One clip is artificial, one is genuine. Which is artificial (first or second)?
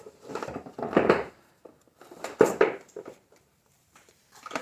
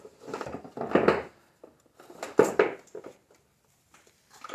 first